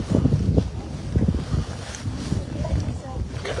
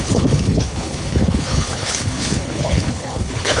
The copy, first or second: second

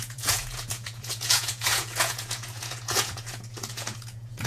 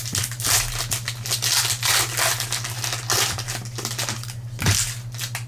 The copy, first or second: first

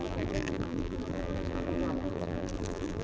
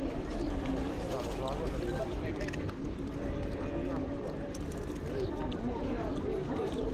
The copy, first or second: first